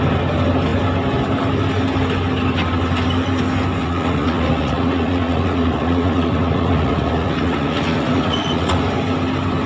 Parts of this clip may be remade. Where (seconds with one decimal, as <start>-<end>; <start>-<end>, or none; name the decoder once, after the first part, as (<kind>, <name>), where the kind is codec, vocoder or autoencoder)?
3.8-8.8 (vocoder, Vocos)